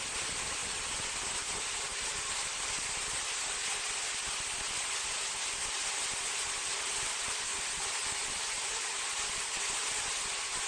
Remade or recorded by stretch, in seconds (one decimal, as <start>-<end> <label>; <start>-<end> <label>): 0.0-10.7 recorded